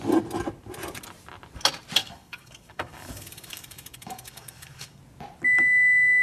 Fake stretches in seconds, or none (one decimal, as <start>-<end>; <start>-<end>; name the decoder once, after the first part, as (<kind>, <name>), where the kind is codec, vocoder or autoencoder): 2.0-5.0 (codec, DAC)